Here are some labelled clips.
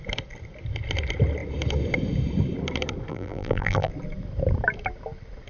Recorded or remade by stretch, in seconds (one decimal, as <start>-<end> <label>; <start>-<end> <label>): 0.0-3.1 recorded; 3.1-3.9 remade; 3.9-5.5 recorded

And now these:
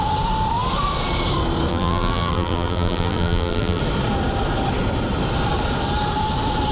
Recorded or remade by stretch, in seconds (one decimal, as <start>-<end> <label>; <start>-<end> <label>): 0.0-1.7 recorded; 1.7-3.8 remade; 3.8-6.7 recorded

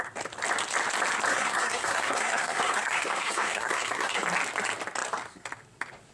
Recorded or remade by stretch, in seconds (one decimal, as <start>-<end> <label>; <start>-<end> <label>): 0.0-1.3 recorded; 1.3-4.2 remade; 4.2-6.1 recorded